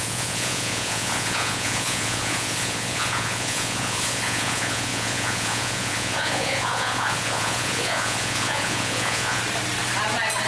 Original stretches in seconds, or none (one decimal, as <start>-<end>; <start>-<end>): 9.4-10.5

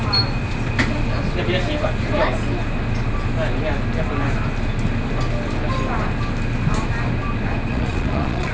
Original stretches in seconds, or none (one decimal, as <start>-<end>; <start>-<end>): 0.0-7.7

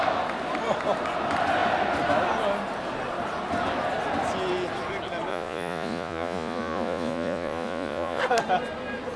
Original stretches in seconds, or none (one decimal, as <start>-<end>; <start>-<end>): 0.0-5.3; 8.2-9.2

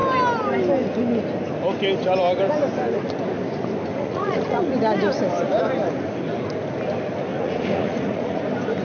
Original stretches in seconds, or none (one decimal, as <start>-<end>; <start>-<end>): 0.0-3.9; 4.7-7.3; 8.4-8.8

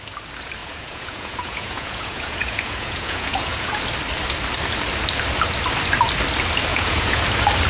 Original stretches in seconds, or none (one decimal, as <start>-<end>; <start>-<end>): 0.0-0.6; 3.8-6.7; 7.2-7.7

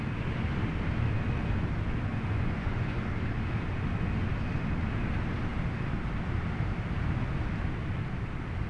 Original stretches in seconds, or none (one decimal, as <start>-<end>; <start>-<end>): 0.0-2.1; 3.1-8.7

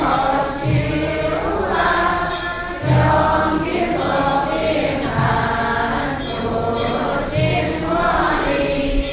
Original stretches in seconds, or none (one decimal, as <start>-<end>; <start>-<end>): 0.0-9.1

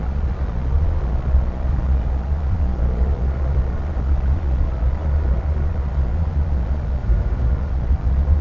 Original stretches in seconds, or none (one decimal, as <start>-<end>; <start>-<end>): 7.0-7.5